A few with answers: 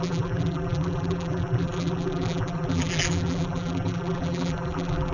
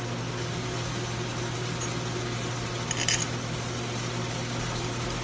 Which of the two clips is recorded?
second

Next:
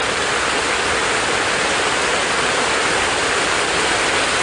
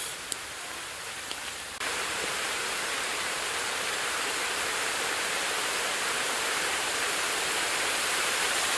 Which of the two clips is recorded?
first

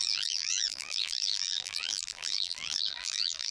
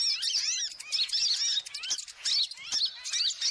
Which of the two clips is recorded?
second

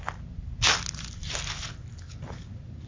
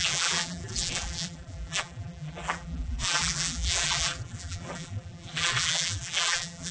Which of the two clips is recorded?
first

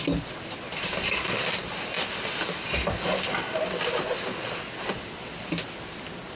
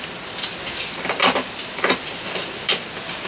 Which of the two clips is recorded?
first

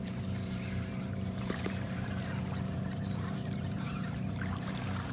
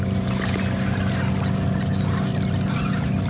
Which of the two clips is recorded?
second